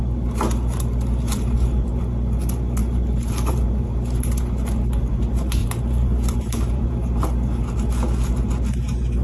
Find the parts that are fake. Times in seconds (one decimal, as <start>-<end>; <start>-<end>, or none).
2.8-4.2; 5.6-6.9